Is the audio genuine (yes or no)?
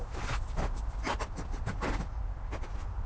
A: yes